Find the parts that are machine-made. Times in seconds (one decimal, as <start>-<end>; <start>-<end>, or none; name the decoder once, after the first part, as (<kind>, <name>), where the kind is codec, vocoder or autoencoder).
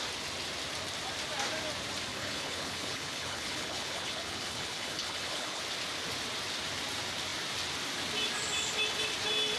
2.1-5.6 (codec, HILCodec)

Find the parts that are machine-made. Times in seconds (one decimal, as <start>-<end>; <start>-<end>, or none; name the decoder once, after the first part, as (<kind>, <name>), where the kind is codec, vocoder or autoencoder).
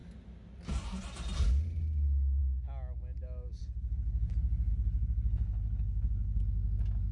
3.6-4.3 (codec, HILCodec); 4.7-6.4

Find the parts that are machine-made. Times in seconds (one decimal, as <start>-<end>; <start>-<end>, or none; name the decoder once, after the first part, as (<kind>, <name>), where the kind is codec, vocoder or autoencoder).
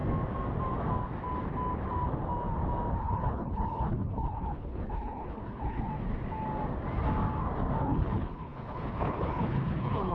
3.0-5.9 (codec, HILCodec); 7.8-10.1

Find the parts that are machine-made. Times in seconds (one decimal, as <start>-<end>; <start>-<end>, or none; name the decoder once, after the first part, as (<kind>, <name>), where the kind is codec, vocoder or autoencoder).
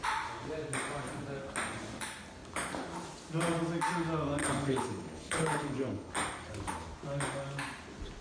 4.4-6.1 (codec, HILCodec)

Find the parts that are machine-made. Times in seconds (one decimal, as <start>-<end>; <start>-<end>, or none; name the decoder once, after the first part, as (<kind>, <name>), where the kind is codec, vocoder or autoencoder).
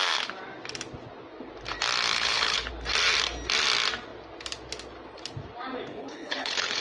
2.1-2.7 (codec, HILCodec); 5.9-6.8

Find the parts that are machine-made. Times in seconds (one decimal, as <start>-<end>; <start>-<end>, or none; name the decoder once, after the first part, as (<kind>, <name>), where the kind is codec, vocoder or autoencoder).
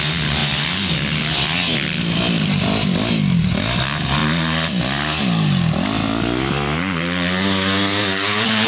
none